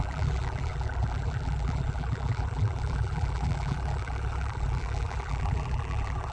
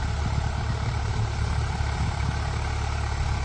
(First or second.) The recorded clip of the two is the second